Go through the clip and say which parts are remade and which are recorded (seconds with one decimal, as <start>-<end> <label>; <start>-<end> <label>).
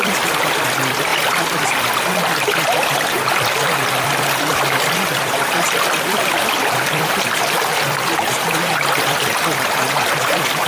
0.0-1.1 remade; 1.1-3.2 recorded; 3.2-10.7 remade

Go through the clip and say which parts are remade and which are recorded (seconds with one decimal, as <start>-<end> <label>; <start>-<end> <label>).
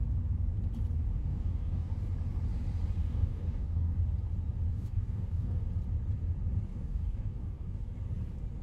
0.0-1.2 recorded; 1.2-1.9 remade; 1.9-3.0 recorded; 3.0-4.0 remade; 4.0-4.7 recorded; 4.7-5.7 remade; 5.7-6.7 recorded; 6.7-7.9 remade; 7.9-8.6 recorded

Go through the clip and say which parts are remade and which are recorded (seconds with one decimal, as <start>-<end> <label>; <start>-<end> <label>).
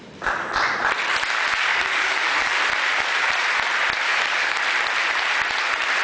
0.0-1.7 recorded; 1.7-2.6 remade; 2.6-4.1 recorded; 4.1-4.6 remade; 4.6-6.0 recorded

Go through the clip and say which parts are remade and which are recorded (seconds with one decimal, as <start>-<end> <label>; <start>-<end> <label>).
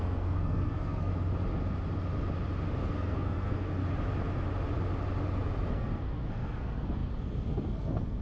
0.0-1.1 remade; 1.1-2.7 recorded; 2.7-3.8 remade; 3.8-5.7 recorded; 5.7-8.2 remade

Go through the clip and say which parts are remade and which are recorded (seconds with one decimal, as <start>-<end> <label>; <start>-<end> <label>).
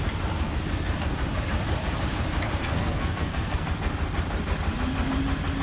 0.0-2.6 recorded; 2.6-3.8 remade; 3.8-5.6 recorded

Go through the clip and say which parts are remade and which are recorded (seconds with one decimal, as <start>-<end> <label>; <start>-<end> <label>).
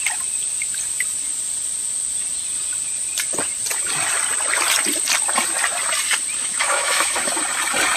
0.0-6.4 recorded; 6.4-7.3 remade; 7.3-8.0 recorded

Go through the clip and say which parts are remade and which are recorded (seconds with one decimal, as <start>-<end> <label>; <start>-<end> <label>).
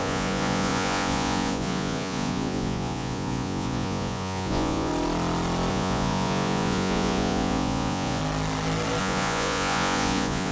0.0-4.9 remade; 4.9-5.7 recorded; 5.7-8.2 remade; 8.2-9.0 recorded; 9.0-10.5 remade